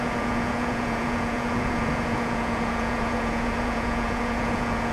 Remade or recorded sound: remade